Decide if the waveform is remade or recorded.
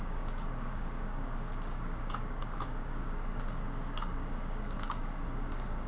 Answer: remade